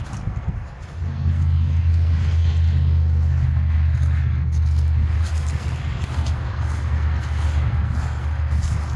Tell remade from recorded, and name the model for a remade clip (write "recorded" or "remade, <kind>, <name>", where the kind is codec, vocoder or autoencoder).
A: remade, codec, SNAC